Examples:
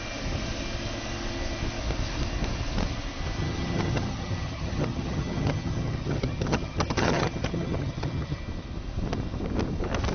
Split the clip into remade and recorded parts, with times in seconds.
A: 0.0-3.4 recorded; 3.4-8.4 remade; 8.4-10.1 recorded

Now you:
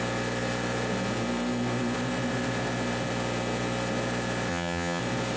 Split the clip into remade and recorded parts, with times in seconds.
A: 0.0-4.5 recorded; 4.5-5.0 remade; 5.0-5.4 recorded

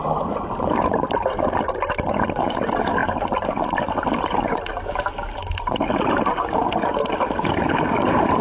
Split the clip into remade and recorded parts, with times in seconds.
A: 0.0-8.4 recorded

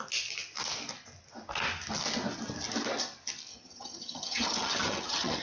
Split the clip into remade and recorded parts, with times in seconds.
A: 0.0-3.5 recorded; 3.5-5.4 remade

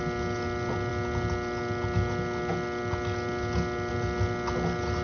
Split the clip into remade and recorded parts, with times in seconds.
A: 0.0-5.0 recorded

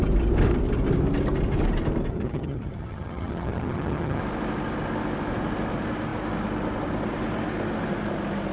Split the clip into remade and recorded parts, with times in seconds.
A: 0.0-2.1 recorded; 2.1-4.2 remade; 4.2-8.5 recorded

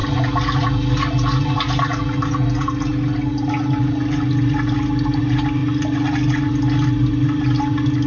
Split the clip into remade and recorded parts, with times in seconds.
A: 0.0-8.1 recorded

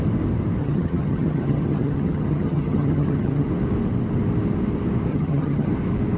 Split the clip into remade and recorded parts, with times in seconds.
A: 0.0-0.6 recorded; 0.6-3.5 remade; 3.5-5.1 recorded; 5.1-5.7 remade; 5.7-6.2 recorded